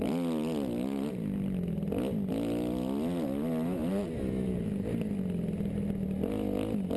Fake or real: real